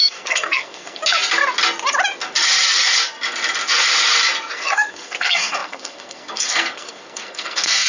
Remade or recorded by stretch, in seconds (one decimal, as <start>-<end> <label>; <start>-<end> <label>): 0.0-1.0 remade; 1.0-4.5 recorded; 4.5-7.9 remade